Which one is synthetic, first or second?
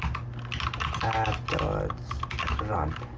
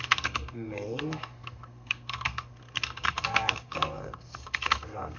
second